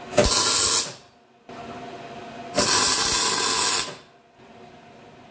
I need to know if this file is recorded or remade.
recorded